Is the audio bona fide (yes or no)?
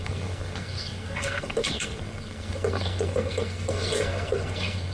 no